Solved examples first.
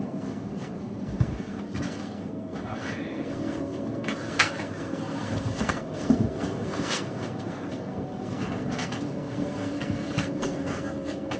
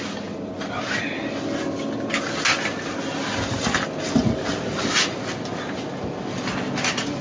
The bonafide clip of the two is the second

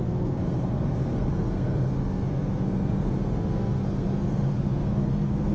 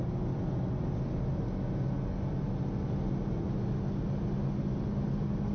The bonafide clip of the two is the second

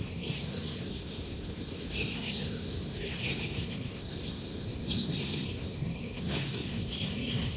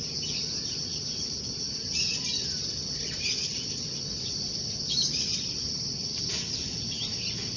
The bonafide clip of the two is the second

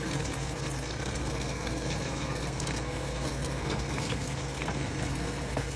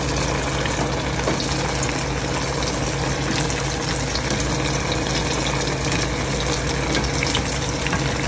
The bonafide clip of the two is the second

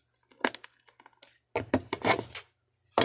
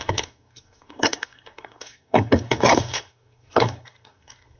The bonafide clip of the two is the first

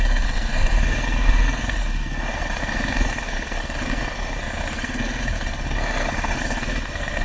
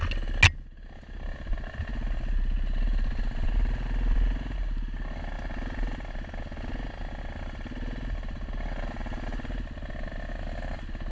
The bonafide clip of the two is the second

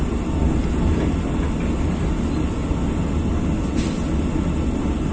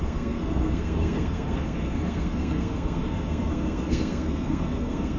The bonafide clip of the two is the first